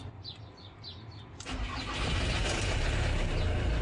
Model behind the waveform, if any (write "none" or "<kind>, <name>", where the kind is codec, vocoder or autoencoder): none